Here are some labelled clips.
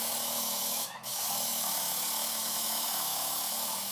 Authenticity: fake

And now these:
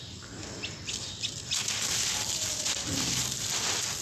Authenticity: real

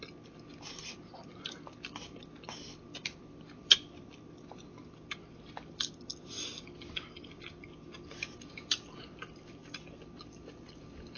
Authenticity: real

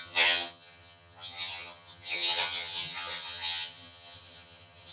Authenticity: fake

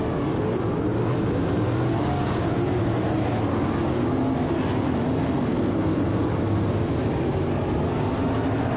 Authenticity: real